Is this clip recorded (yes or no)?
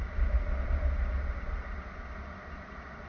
yes